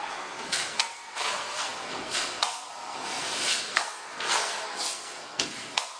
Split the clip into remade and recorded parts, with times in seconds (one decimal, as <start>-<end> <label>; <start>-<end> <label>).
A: 0.0-6.0 remade